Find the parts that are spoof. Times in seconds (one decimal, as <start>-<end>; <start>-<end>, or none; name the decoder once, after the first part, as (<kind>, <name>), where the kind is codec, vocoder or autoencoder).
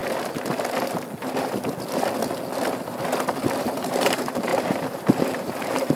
3.6-6.0 (vocoder, BigVGAN v2)